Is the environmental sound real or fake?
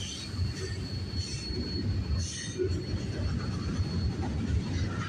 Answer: real